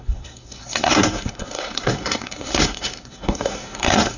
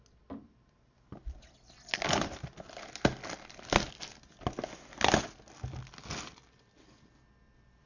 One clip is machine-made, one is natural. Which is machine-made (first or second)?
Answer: first